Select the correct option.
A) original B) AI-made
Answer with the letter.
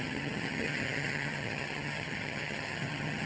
B